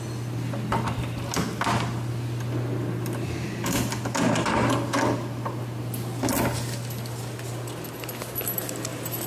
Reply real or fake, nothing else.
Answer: real